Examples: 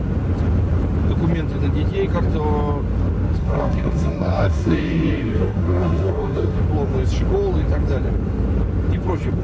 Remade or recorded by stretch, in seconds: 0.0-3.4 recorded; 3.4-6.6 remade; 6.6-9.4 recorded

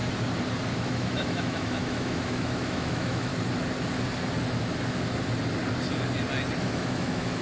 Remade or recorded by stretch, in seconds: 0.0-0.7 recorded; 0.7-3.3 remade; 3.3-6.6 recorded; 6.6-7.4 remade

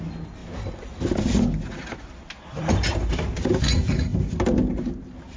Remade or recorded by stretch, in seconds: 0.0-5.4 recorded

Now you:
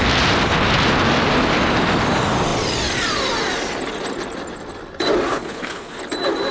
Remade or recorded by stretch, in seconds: 0.0-5.3 recorded; 5.3-6.0 remade; 6.0-6.5 recorded

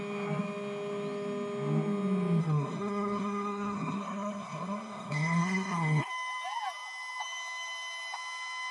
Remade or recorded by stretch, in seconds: 0.0-2.4 recorded; 2.4-6.1 remade; 6.1-8.7 recorded